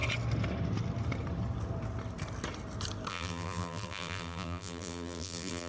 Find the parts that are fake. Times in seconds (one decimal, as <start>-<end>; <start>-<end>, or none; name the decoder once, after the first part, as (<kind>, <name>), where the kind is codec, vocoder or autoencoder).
3.1-5.7 (vocoder, BigVGAN v2)